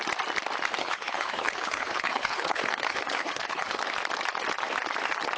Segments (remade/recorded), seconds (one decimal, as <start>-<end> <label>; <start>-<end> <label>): 0.0-0.8 recorded; 0.8-3.8 remade; 3.8-5.4 recorded